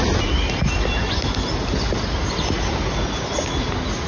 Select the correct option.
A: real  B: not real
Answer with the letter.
A